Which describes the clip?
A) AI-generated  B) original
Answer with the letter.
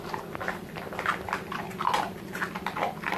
B